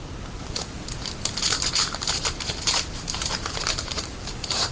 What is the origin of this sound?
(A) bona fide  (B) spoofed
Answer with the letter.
B